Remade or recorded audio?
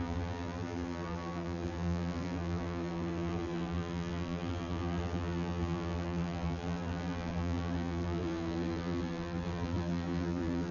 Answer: remade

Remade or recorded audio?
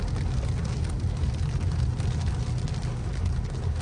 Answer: recorded